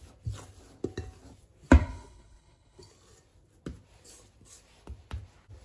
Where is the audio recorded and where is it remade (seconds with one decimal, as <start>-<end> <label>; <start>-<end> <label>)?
0.0-1.8 recorded; 1.8-2.9 remade; 2.9-5.6 recorded